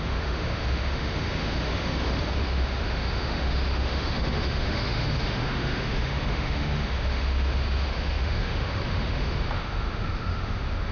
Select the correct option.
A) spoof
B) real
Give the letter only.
A